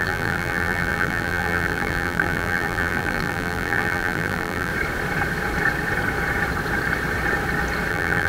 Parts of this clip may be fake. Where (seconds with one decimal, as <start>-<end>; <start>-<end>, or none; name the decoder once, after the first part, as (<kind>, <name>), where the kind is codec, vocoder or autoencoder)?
0.0-4.7 (vocoder, BigVGAN v2); 7.9-8.3